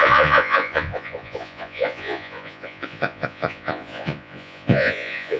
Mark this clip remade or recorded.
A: remade